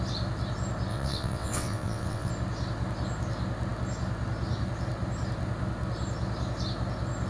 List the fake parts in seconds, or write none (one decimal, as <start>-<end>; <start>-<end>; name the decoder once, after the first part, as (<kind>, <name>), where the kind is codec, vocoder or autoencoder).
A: 0.9-2.3 (vocoder, WaveNeXt)